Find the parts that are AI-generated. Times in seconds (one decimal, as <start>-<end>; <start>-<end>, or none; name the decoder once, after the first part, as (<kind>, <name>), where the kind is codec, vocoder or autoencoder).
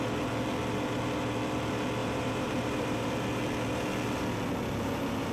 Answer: 2.0-3.1 (vocoder, BigVGAN v2)